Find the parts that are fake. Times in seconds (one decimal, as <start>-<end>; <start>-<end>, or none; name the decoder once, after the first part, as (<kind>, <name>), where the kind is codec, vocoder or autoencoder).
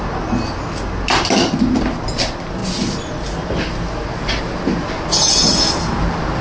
none